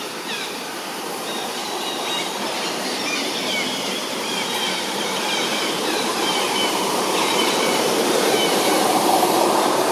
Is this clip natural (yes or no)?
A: no